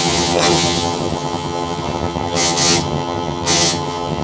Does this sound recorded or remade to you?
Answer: remade